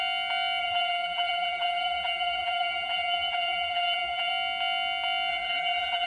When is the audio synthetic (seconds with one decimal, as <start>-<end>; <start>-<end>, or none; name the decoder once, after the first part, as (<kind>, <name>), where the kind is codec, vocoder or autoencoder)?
0.6-4.3 (vocoder, BigVGAN v2); 5.3-6.1